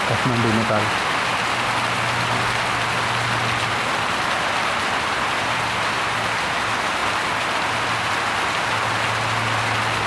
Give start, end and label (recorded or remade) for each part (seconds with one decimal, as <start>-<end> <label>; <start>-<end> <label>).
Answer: 0.0-10.1 recorded